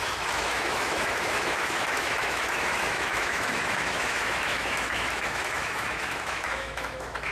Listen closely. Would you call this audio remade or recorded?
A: remade